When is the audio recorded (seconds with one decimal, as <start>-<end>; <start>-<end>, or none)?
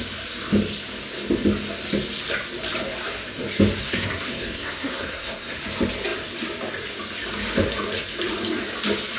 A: 0.0-3.8; 5.6-9.2